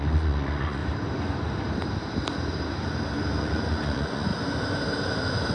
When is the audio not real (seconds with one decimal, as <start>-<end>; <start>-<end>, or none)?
0.0-0.8; 3.3-4.3

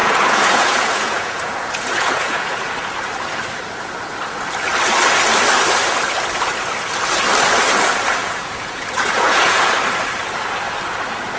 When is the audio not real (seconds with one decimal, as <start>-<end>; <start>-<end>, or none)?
0.0-2.7; 8.2-9.7

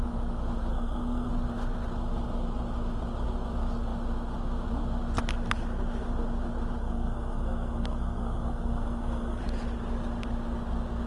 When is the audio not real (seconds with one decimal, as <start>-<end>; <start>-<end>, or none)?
0.7-1.3; 6.8-9.4

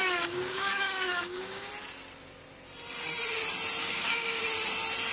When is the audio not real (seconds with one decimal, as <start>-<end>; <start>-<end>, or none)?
0.0-1.7; 3.8-4.4

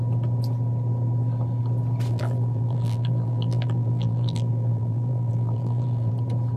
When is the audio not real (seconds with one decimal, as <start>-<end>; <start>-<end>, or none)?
2.1-6.1

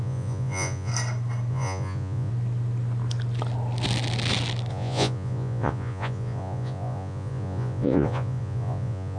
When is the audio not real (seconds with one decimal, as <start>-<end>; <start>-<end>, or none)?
0.0-0.9; 1.5-2.3; 4.7-9.2